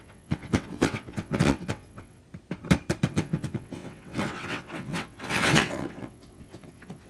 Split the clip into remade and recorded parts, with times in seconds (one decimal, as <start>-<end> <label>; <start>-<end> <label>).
0.0-2.2 remade; 2.2-3.1 recorded; 3.1-7.1 remade